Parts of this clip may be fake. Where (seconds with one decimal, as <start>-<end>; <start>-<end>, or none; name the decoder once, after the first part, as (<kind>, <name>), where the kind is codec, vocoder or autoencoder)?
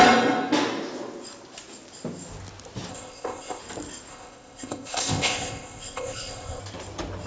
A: 2.9-3.6 (codec, ZipCodec); 4.1-6.6